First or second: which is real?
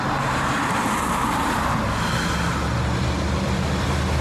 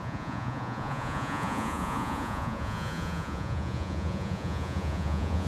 first